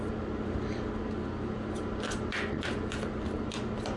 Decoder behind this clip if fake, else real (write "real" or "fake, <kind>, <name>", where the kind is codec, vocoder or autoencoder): real